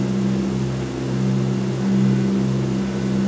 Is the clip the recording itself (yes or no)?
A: yes